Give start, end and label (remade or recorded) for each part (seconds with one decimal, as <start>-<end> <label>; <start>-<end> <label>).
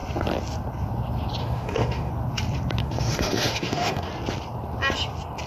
0.0-1.4 recorded; 1.4-2.1 remade; 2.1-2.8 recorded; 2.8-4.1 remade; 4.1-5.5 recorded